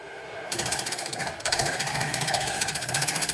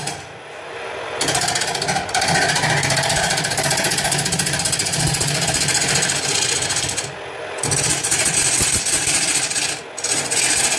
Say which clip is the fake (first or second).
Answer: first